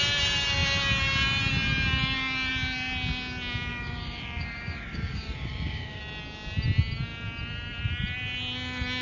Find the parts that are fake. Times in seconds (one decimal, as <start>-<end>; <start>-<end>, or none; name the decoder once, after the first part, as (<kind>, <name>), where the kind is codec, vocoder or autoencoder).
3.7-6.0 (codec, DAC)

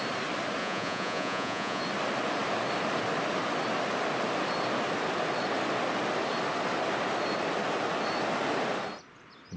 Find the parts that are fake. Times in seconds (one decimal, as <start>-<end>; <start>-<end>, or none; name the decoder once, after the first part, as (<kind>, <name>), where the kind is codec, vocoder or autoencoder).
0.6-1.8 (vocoder, Vocos)

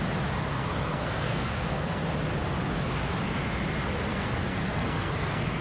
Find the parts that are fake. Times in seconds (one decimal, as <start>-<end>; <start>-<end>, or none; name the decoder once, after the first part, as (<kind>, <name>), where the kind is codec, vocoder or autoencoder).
0.5-2.0 (codec, SNAC); 4.1-5.6